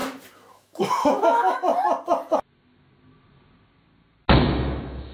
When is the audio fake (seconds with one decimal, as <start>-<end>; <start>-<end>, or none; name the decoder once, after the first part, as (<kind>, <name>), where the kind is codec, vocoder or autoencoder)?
0.5-1.7 (autoencoder, DAC-VAE); 4.4-5.1